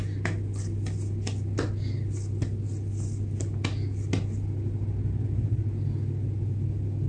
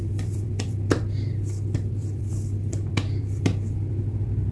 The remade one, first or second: second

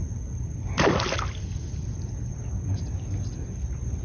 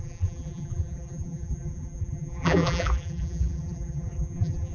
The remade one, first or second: second